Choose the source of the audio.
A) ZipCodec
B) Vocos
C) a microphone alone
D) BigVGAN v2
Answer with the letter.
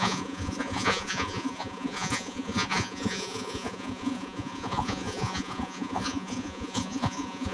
B